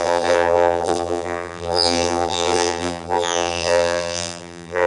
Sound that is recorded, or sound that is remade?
remade